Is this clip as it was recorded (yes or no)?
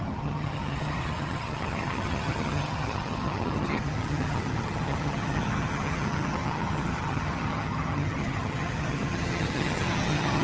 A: no